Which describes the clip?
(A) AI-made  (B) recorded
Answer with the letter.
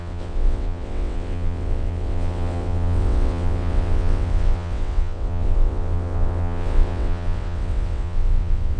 A